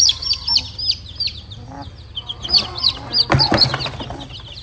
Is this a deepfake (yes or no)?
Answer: no